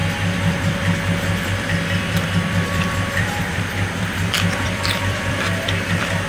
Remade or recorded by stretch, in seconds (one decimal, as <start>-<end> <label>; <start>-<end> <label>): 0.0-6.3 remade